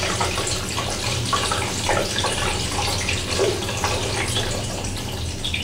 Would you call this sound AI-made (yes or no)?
no